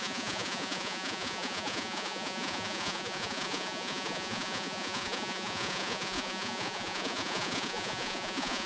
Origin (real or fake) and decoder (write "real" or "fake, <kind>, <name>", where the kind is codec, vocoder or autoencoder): fake, vocoder, Vocos